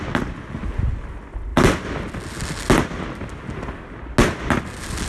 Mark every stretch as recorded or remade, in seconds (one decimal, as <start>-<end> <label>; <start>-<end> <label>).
0.0-5.1 recorded

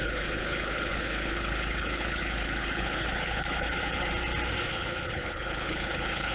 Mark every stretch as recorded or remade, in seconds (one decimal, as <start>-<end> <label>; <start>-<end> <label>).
0.0-4.1 remade; 4.1-4.7 recorded; 4.7-6.3 remade

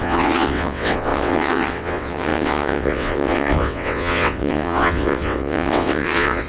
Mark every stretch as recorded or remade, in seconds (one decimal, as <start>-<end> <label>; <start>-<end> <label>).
0.0-6.5 remade

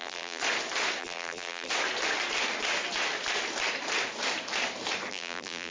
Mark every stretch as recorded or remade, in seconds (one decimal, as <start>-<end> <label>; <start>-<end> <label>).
0.0-0.4 remade; 0.4-1.0 recorded; 1.0-1.7 remade; 1.7-5.1 recorded; 5.1-5.7 remade

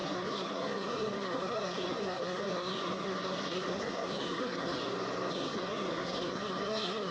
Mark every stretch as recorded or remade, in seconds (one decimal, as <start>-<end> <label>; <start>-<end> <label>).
0.0-4.8 remade; 4.8-5.3 recorded; 5.3-7.1 remade

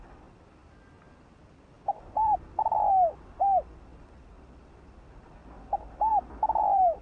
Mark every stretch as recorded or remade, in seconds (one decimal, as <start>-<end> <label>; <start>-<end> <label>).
0.0-2.6 remade; 2.6-6.1 recorded; 6.1-7.0 remade

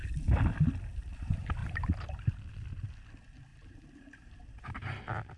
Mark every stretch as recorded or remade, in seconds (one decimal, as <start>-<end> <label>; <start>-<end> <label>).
0.0-1.6 recorded; 1.6-2.5 remade; 2.5-3.5 recorded; 3.5-5.0 remade; 5.0-5.4 recorded